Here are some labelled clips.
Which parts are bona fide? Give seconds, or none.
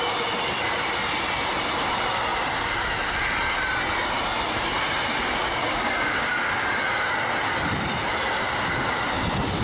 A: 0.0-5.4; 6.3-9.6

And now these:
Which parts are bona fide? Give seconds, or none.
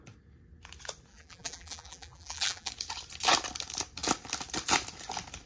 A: 0.0-1.1; 2.7-5.5